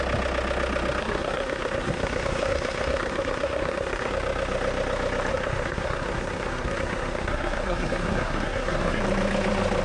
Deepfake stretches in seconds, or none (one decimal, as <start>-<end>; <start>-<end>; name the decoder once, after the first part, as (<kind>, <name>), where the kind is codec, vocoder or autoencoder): 1.0-4.1 (codec, SNAC); 5.3-9.0